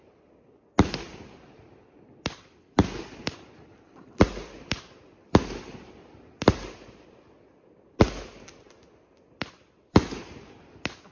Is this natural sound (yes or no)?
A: yes